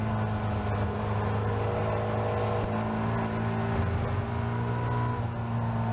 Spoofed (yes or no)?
no